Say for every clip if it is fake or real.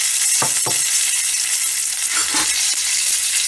real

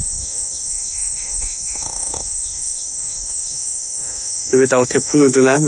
fake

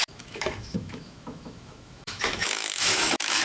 fake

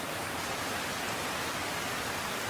real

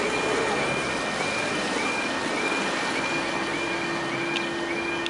real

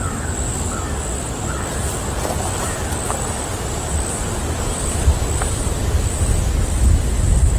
real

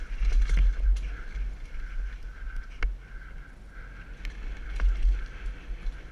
real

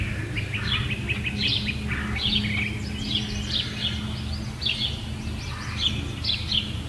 real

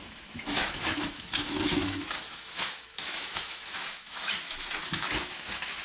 fake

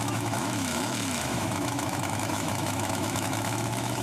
fake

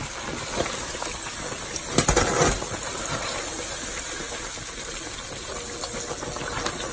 real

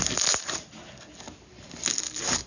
real